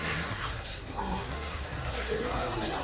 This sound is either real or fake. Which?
fake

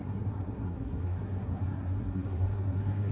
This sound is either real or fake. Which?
fake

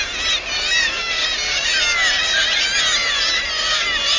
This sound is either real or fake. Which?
real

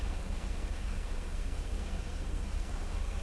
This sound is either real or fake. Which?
fake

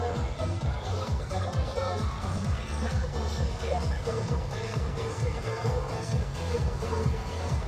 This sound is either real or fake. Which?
fake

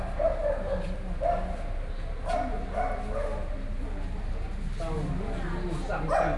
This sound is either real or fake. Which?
real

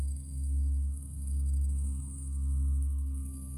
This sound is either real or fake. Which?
fake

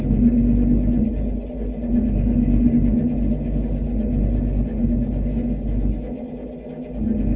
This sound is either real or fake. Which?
real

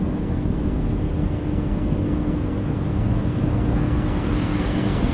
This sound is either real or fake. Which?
fake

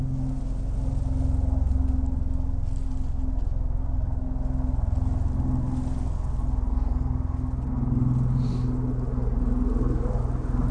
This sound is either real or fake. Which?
real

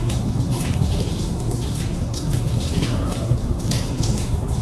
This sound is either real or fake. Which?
fake